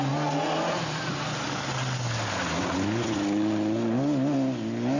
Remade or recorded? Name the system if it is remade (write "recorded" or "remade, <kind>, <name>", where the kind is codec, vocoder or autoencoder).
recorded